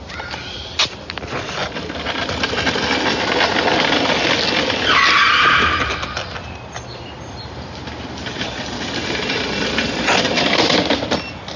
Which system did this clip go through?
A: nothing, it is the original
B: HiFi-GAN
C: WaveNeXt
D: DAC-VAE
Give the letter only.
A